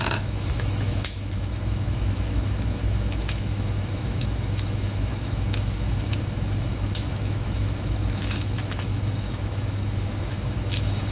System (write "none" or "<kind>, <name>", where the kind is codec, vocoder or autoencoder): autoencoder, DAC-VAE